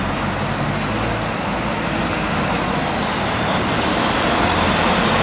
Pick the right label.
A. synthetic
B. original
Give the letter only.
B